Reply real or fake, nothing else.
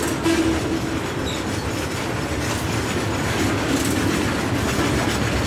real